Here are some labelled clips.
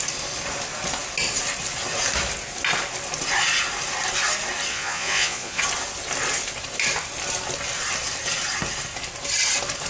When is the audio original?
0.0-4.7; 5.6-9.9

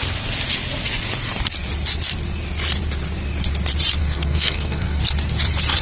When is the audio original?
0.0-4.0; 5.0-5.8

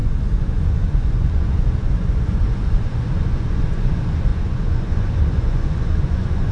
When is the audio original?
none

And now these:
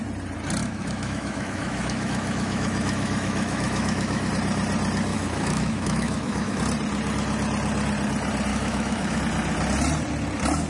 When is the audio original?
0.0-0.6; 4.3-5.1; 6.6-8.5; 9.2-10.7

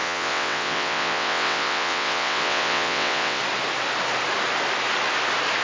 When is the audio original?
3.4-5.6

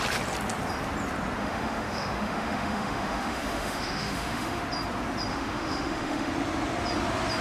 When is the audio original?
0.0-1.4; 4.6-5.3; 6.3-7.4

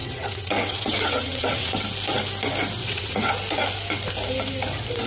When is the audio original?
1.8-2.8; 3.3-5.1